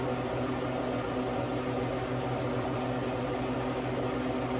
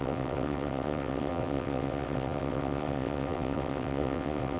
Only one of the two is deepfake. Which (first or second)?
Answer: second